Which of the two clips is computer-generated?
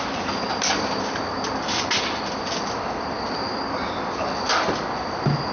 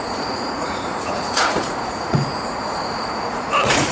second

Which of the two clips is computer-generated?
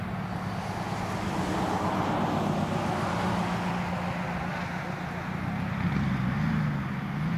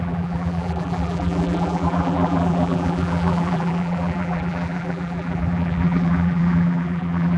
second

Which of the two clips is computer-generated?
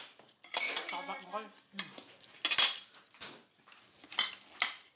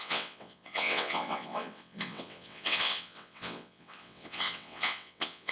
second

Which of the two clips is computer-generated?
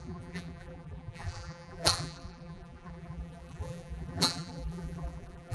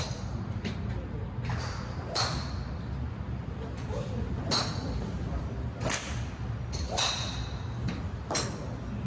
first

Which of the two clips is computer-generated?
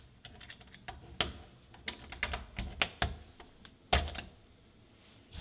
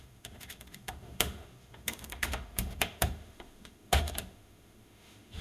second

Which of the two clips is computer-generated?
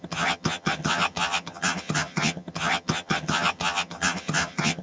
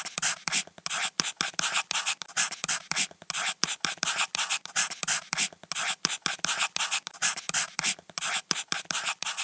first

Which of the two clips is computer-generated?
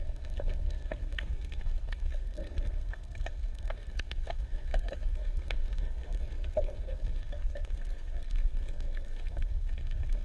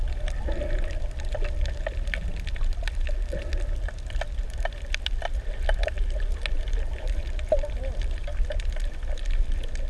first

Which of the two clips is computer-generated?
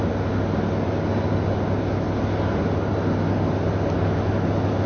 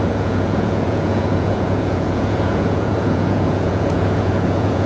second